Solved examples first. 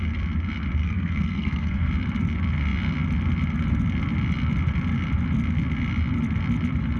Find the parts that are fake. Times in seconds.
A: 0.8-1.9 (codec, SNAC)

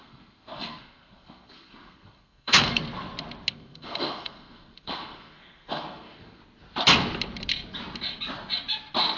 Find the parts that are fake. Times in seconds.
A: 0.0-2.8 (codec, SNAC); 3.5-6.4

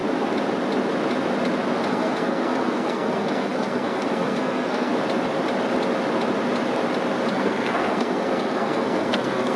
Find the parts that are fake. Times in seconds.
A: 1.9-4.9 (codec, SNAC); 7.3-9.6

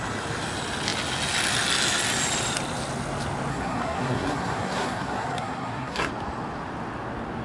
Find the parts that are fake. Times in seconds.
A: 3.5-6.1 (codec, SNAC)

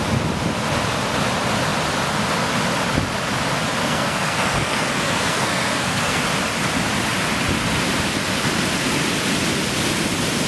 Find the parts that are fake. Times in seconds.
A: 3.8-6.2 (codec, SNAC)